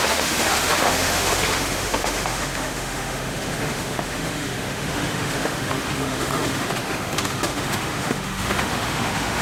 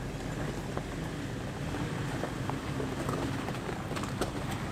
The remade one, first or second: first